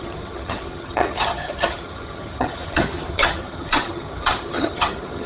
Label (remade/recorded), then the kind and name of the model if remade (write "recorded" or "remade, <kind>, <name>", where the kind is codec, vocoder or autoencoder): remade, vocoder, HiFi-GAN